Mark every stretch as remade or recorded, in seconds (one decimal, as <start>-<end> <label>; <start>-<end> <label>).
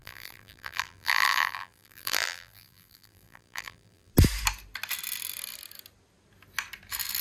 0.0-4.1 remade; 4.1-7.2 recorded